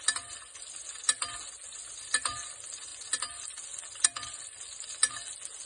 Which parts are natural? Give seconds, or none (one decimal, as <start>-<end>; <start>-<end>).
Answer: 0.0-5.7